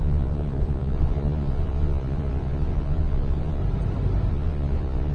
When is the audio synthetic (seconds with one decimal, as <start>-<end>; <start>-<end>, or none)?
0.0-3.6; 4.3-5.1